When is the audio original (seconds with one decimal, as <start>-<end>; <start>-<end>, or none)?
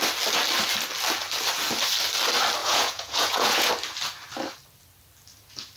0.0-2.6; 3.7-5.8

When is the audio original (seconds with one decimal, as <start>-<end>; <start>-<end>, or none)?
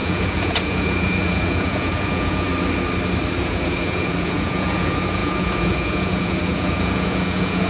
2.5-3.4